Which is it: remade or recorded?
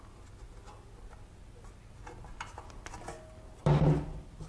recorded